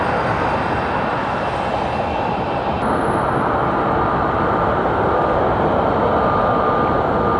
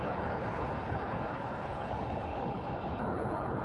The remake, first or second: second